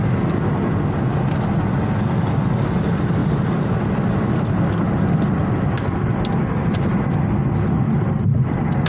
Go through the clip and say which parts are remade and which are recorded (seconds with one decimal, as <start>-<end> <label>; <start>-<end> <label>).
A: 0.0-3.2 recorded; 3.2-7.2 remade; 7.2-8.9 recorded